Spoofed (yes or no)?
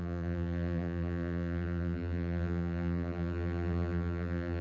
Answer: yes